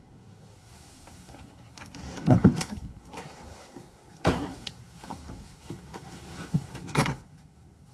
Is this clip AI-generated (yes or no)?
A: yes